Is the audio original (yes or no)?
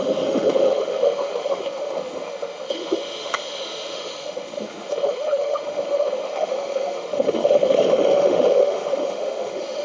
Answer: no